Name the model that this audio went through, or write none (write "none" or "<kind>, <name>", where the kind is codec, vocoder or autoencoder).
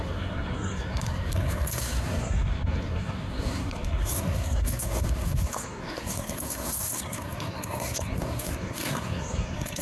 codec, SNAC